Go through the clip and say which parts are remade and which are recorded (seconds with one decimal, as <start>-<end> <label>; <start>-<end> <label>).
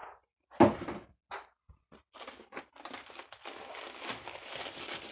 0.0-5.1 recorded